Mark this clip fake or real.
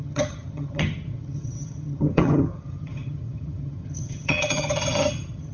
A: fake